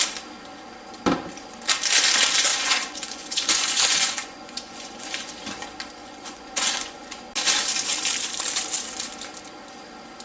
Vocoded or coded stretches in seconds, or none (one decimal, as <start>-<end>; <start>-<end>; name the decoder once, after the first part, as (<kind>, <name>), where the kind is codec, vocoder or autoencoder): 2.5-5.3 (vocoder, Vocos); 6.0-7.2